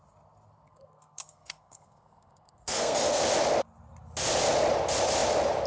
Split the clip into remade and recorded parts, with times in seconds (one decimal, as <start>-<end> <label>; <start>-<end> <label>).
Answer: 0.0-0.7 recorded; 0.7-3.2 remade; 3.2-5.7 recorded

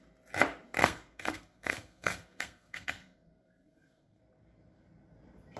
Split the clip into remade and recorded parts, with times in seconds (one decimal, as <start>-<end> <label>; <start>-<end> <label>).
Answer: 0.0-0.8 recorded; 0.8-4.2 remade; 4.2-5.6 recorded

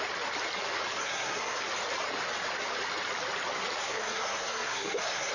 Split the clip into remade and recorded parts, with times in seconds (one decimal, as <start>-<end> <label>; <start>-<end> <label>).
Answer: 0.0-1.0 recorded; 1.0-1.6 remade; 1.6-3.8 recorded; 3.8-5.3 remade

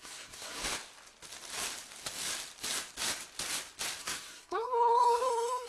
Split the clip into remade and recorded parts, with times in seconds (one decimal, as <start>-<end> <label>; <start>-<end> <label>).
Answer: 0.0-0.6 remade; 0.6-4.0 recorded; 4.0-5.7 remade

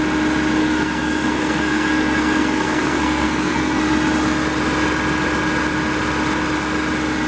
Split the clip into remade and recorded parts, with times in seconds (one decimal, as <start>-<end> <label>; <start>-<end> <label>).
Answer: 0.0-0.6 recorded; 0.6-3.8 remade; 3.8-7.3 recorded

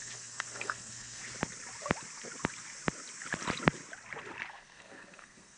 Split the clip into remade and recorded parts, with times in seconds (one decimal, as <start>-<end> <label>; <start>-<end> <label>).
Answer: 0.0-1.2 remade; 1.2-4.5 recorded; 4.5-5.6 remade

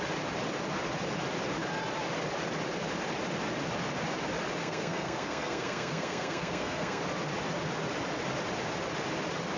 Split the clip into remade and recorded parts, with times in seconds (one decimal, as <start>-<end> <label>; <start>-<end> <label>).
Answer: 0.0-4.6 recorded; 4.6-7.0 remade; 7.0-9.6 recorded

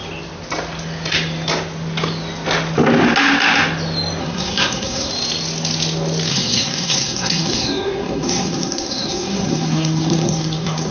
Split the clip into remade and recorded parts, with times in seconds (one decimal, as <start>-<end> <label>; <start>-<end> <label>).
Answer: 0.0-4.2 recorded; 4.2-5.1 remade; 5.1-6.3 recorded; 6.3-10.9 remade